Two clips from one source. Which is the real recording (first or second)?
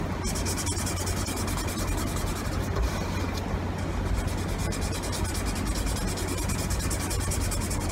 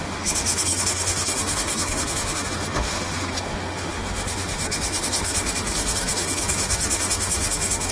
first